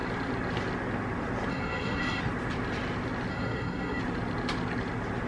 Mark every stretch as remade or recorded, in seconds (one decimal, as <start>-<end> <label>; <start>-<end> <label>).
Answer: 0.0-1.5 recorded; 1.5-2.2 remade; 2.2-3.3 recorded; 3.3-4.0 remade; 4.0-5.3 recorded